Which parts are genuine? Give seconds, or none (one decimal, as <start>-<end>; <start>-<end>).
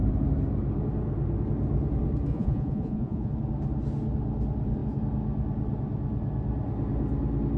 0.0-2.3; 3.3-7.6